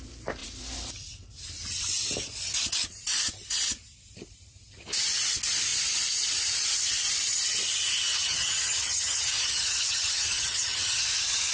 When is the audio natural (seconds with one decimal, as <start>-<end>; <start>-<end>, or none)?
0.0-8.1